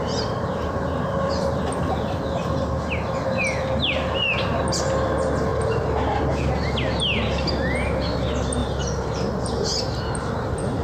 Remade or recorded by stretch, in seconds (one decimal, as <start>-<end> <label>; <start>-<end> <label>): 0.0-5.5 recorded; 5.5-6.2 remade; 6.2-10.8 recorded